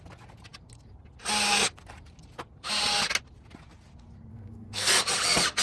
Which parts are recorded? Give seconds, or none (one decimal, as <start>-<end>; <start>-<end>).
0.0-4.3; 4.9-5.6

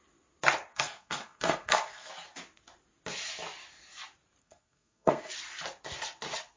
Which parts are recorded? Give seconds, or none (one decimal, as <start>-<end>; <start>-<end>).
0.0-0.7; 2.1-4.4; 5.3-6.6

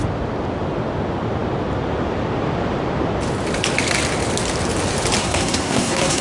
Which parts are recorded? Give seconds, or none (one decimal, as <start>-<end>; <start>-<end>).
0.0-5.2

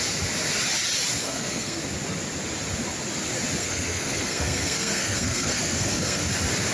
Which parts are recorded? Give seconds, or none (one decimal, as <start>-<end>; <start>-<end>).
0.0-1.2; 1.8-3.6; 6.3-6.7

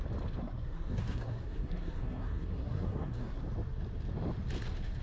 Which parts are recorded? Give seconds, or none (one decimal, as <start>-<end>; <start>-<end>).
0.0-0.4; 3.4-5.0

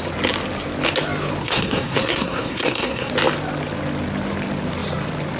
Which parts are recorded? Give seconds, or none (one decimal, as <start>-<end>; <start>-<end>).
0.0-1.4; 3.1-5.4